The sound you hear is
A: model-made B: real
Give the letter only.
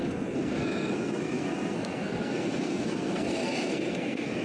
A